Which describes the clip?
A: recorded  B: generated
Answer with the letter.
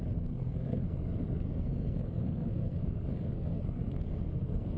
B